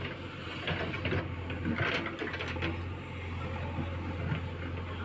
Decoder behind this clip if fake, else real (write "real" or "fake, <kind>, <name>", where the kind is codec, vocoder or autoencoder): real